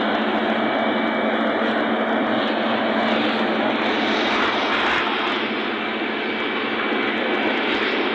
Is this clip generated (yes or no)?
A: no